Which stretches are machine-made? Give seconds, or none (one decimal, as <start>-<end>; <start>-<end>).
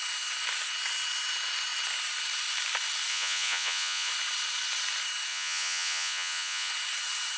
3.1-4.1; 5.3-6.7